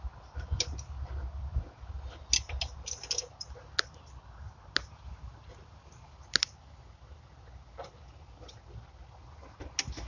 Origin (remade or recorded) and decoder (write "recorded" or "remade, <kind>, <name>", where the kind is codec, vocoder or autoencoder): recorded